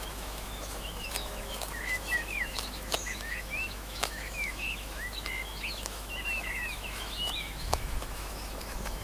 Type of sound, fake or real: fake